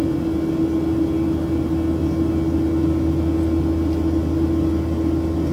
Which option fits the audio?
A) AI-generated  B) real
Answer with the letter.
B